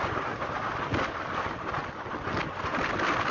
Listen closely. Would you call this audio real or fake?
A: real